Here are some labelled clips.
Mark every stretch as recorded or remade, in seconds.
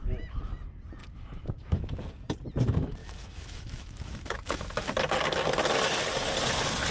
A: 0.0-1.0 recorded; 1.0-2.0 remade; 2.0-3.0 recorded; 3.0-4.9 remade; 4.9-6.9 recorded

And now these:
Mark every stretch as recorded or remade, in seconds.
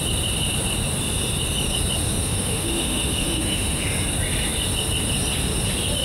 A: 0.0-2.2 recorded; 2.2-3.8 remade; 3.8-6.0 recorded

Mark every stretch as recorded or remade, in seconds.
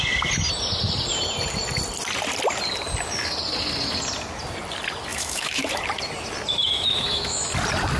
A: 0.0-5.1 recorded; 5.1-5.7 remade; 5.7-6.6 recorded; 6.6-7.5 remade; 7.5-8.0 recorded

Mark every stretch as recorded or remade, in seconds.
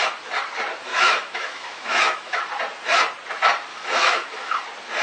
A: 0.0-0.9 recorded; 0.9-2.4 remade; 2.4-3.7 recorded; 3.7-4.6 remade; 4.6-5.0 recorded